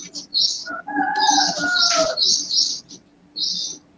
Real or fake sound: real